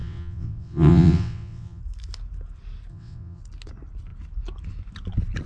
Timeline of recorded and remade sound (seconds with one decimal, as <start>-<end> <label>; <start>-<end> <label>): 0.0-1.8 remade; 1.8-2.9 recorded; 2.9-3.4 remade; 3.4-5.5 recorded